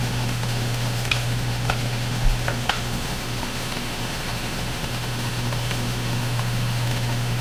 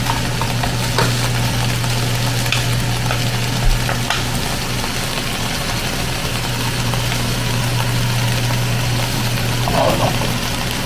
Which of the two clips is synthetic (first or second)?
first